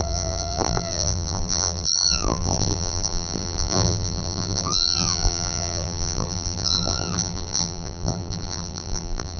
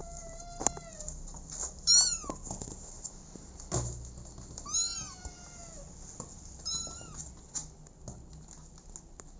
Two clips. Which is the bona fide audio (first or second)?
second